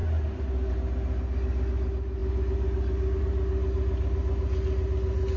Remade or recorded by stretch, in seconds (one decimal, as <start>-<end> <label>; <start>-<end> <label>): 0.0-5.4 recorded